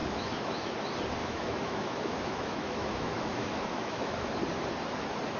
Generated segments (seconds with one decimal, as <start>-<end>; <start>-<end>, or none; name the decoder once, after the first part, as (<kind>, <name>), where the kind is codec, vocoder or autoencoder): 0.0-0.7 (autoencoder, DAC-VAE); 1.2-4.4